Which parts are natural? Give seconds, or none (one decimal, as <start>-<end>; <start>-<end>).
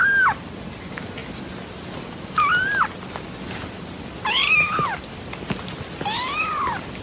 0.0-7.0